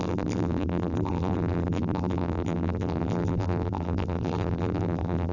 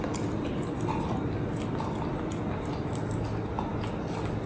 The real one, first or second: second